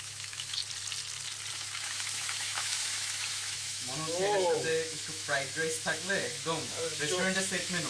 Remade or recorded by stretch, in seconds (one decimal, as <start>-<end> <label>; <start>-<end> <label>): 0.0-0.6 remade; 0.6-1.5 recorded; 1.5-7.9 remade